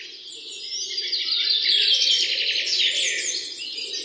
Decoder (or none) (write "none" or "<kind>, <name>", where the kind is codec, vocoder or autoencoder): none